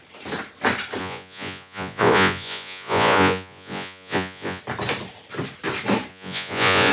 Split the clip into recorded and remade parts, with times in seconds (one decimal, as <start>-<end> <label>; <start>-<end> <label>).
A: 0.0-1.0 recorded; 1.0-4.6 remade; 4.6-6.1 recorded; 6.1-6.9 remade